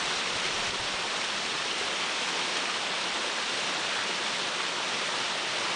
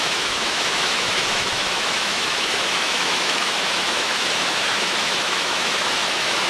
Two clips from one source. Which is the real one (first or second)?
first